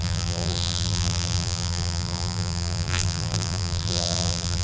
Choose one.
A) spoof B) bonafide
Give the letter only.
A